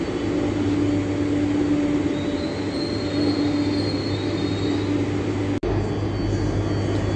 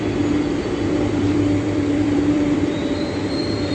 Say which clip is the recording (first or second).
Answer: first